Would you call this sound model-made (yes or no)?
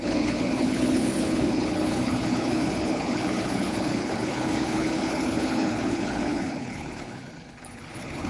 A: yes